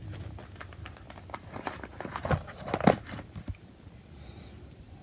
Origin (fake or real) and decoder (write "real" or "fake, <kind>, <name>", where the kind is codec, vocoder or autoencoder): real